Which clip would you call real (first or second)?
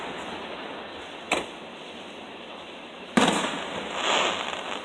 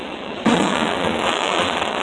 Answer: first